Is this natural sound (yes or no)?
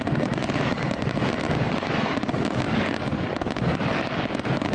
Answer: no